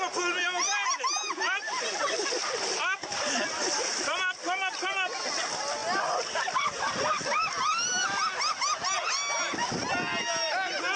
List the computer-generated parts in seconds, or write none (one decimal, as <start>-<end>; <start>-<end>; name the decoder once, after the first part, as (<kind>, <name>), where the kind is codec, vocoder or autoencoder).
none